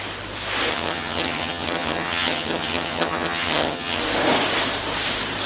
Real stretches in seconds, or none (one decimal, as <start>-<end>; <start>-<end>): 0.0-0.7; 4.0-5.5